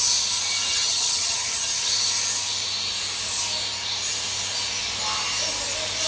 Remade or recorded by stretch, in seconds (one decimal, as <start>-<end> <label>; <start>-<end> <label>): 0.0-0.7 recorded; 0.7-1.9 remade; 1.9-6.1 recorded